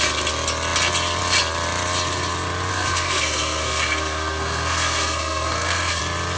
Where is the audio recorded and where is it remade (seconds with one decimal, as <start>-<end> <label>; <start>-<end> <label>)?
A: 0.0-2.7 recorded; 2.7-6.0 remade; 6.0-6.4 recorded